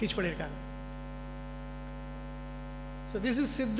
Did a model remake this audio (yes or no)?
no